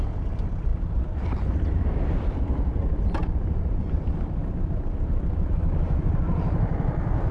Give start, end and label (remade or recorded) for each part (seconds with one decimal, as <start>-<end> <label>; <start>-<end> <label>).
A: 0.0-3.2 recorded; 3.2-3.8 remade; 3.8-7.3 recorded